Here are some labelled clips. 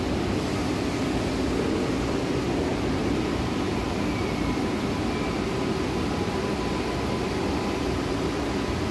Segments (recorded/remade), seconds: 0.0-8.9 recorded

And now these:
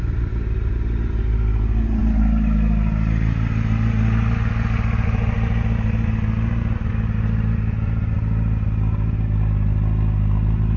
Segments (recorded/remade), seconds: 0.0-10.8 recorded

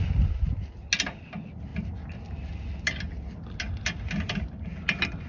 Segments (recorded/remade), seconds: 0.0-5.3 recorded